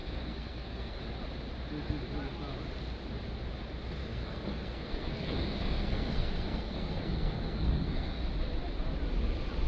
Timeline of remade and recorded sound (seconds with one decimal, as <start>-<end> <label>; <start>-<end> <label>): 0.0-1.0 remade; 1.0-4.0 recorded; 4.0-8.2 remade; 8.2-9.7 recorded